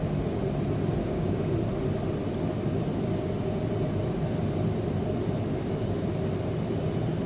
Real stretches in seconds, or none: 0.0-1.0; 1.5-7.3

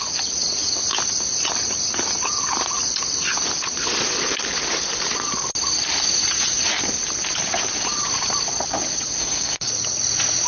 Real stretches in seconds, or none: 0.0-9.2; 9.7-10.5

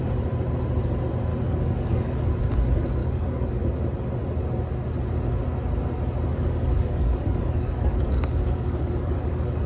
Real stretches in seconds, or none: 0.0-1.3; 2.3-3.0; 3.5-6.3

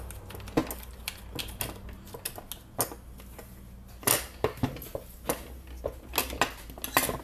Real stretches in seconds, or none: 0.0-7.2